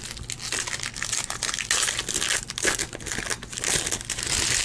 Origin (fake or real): real